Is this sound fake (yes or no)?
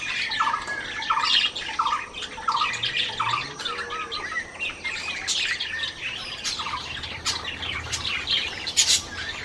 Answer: no